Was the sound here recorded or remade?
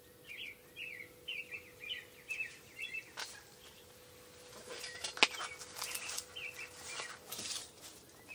recorded